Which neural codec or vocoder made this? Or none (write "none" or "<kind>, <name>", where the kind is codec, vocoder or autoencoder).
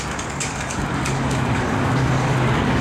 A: codec, DAC